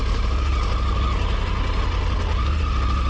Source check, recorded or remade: recorded